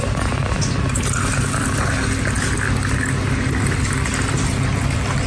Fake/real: real